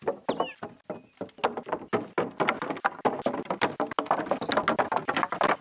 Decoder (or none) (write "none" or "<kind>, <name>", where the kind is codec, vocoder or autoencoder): none